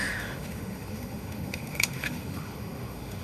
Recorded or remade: remade